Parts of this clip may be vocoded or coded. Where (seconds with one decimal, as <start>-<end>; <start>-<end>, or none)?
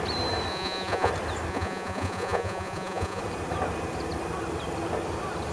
0.5-1.1; 1.5-3.2